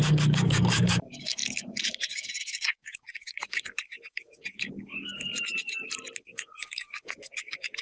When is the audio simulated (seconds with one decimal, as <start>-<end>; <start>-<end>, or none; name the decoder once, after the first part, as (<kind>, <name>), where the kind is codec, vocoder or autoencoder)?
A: 0.0-5.3 (codec, DAC); 6.2-7.8